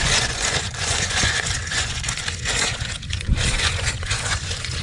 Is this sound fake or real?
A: fake